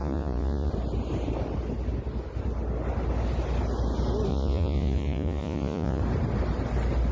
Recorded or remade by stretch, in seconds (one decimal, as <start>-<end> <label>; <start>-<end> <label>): 0.0-0.7 remade; 0.7-4.3 recorded; 4.3-6.0 remade; 6.0-7.1 recorded